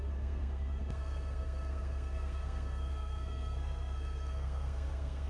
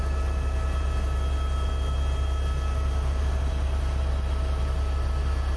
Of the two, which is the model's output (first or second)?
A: first